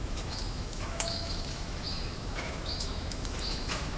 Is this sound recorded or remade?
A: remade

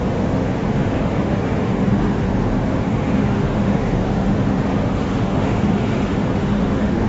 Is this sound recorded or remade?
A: remade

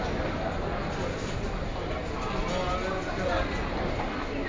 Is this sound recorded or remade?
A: recorded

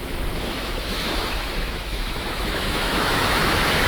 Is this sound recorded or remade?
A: remade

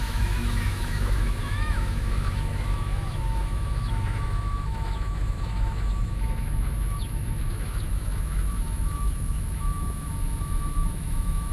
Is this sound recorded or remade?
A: remade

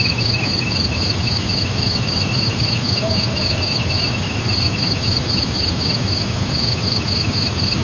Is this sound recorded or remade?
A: remade